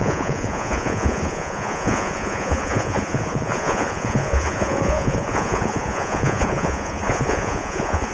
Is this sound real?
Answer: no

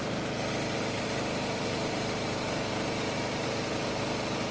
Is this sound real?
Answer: no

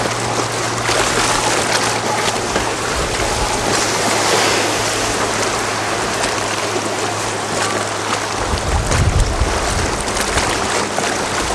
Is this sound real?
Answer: yes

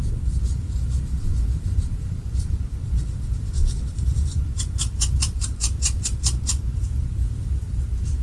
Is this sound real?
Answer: no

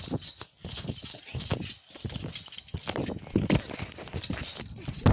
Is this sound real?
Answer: yes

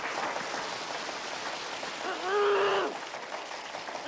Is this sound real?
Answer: yes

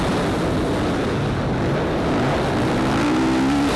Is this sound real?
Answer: yes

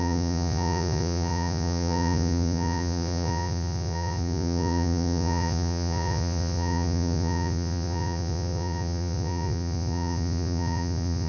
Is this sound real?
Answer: no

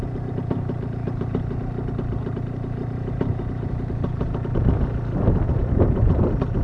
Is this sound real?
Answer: yes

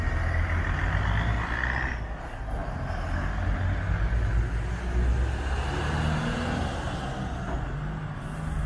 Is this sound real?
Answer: yes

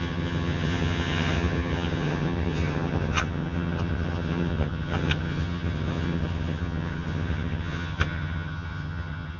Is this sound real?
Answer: no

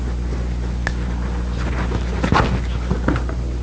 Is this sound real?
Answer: yes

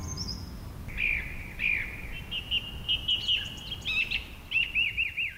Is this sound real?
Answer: yes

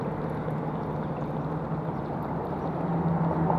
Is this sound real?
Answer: no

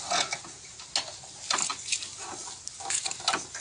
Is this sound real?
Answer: yes